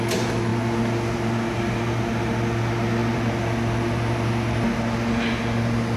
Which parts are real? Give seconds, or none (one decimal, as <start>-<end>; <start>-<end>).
0.0-6.0